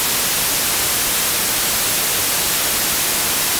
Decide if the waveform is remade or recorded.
recorded